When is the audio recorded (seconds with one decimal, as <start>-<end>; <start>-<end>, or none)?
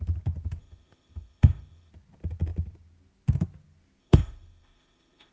0.0-0.6; 1.9-4.0